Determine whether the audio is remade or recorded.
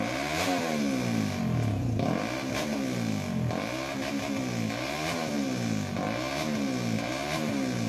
recorded